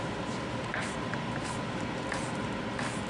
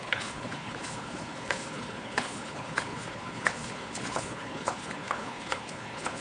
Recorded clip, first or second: first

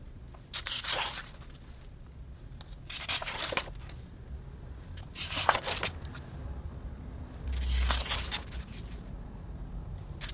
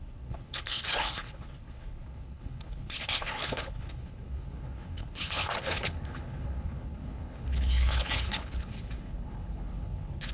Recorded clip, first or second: first